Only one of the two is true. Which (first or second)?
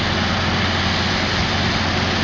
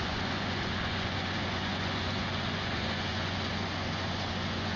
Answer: first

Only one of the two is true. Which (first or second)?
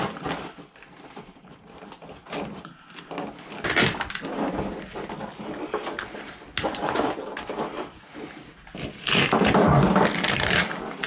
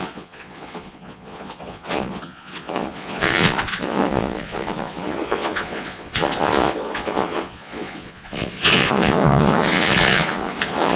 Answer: first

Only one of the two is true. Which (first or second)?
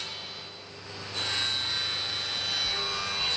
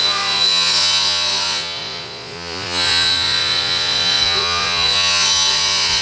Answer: first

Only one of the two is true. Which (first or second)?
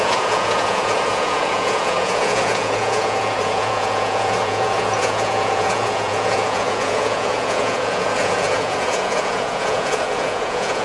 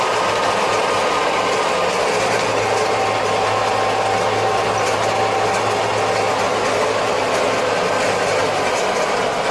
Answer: second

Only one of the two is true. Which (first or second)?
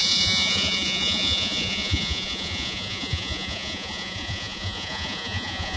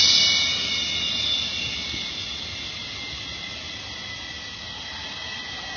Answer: second